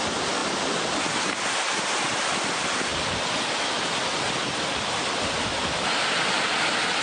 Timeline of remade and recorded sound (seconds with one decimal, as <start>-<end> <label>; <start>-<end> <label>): 0.0-7.0 recorded